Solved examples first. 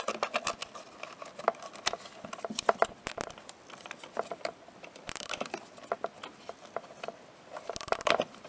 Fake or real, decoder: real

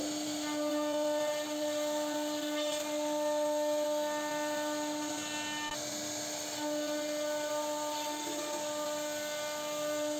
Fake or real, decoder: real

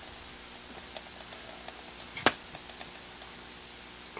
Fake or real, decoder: real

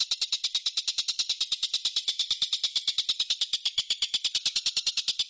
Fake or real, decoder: real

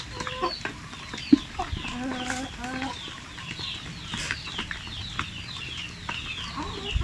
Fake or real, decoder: real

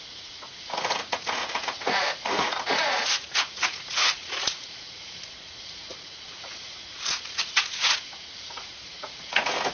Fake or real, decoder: fake, vocoder, Vocos